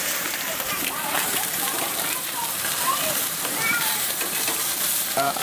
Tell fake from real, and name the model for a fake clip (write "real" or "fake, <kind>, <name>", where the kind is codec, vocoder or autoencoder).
fake, vocoder, BigVGAN v2